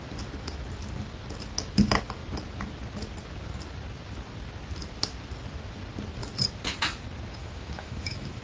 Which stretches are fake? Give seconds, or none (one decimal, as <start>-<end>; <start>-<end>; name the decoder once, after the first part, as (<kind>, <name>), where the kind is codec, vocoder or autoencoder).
7.4-8.4 (autoencoder, DAC-VAE)